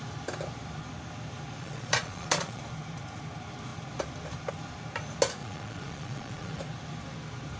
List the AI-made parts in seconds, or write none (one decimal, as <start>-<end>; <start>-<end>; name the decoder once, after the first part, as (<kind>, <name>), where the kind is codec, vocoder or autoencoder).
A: 1.6-2.6 (vocoder, Vocos); 5.4-6.6